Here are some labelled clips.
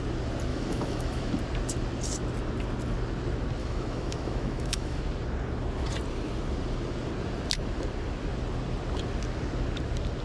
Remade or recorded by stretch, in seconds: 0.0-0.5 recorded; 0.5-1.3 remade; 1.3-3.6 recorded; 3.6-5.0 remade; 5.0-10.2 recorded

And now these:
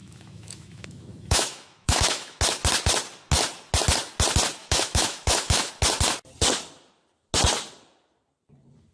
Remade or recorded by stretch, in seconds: 0.0-2.4 remade; 2.4-4.6 recorded; 4.6-5.7 remade; 5.7-8.9 recorded

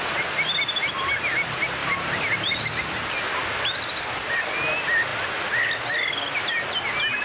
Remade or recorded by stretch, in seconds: 0.0-1.8 recorded; 1.8-2.6 remade; 2.6-7.2 recorded